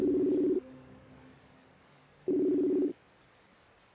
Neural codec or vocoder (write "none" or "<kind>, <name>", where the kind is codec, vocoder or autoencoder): codec, DAC